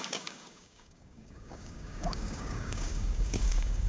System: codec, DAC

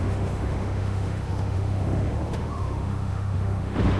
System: autoencoder, DAC-VAE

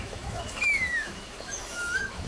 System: autoencoder, DAC-VAE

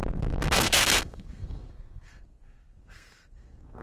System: codec, SNAC